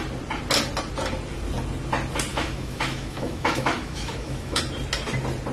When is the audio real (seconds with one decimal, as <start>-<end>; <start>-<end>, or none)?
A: 0.0-2.3; 4.6-5.5